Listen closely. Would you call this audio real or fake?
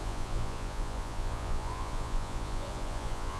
fake